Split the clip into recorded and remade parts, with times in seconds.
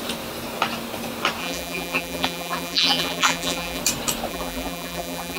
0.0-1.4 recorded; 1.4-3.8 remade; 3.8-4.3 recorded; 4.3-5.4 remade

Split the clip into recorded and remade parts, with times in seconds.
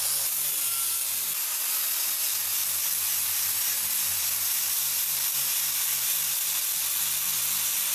0.0-3.2 recorded; 3.2-7.0 remade; 7.0-7.9 recorded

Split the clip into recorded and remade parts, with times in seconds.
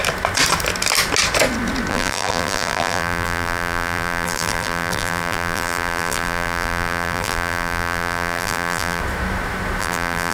0.0-1.9 recorded; 1.9-9.0 remade; 9.0-9.8 recorded; 9.8-10.3 remade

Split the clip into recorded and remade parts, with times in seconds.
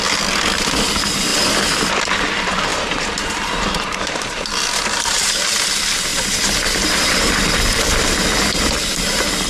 0.0-2.7 recorded; 2.7-5.4 remade; 5.4-6.1 recorded; 6.1-8.2 remade; 8.2-9.5 recorded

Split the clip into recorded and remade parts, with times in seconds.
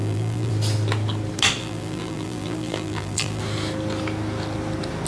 0.0-0.5 remade; 0.5-1.6 recorded; 1.6-3.4 remade; 3.4-5.1 recorded